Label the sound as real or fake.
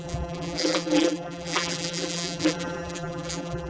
fake